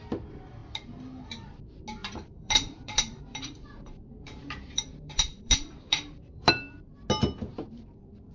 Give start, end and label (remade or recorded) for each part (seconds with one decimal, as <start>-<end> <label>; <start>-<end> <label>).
0.0-2.0 recorded; 2.0-6.5 remade; 6.5-7.5 recorded; 7.5-8.3 remade